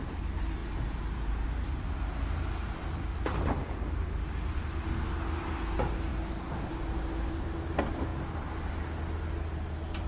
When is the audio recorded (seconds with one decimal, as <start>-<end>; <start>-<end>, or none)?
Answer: 0.0-0.6; 2.2-10.1